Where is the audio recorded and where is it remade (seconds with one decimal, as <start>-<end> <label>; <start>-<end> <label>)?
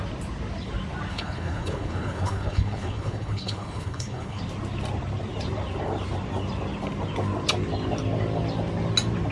0.0-1.1 recorded; 1.1-4.4 remade; 4.4-9.3 recorded